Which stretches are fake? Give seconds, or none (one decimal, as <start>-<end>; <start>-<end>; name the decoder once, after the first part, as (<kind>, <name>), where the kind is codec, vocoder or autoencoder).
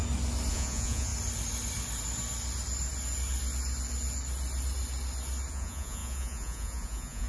0.5-1.1 (vocoder, Vocos); 5.5-7.3